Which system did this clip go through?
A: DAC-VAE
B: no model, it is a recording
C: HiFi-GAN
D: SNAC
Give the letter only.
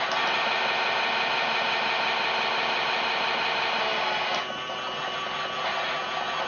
B